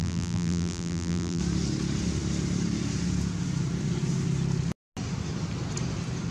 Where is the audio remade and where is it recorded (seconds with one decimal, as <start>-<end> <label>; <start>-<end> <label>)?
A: 0.0-1.4 remade; 1.4-6.3 recorded